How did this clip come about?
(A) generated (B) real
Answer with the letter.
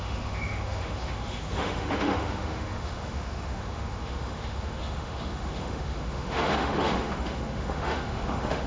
A